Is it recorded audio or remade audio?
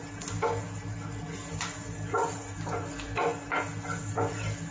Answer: recorded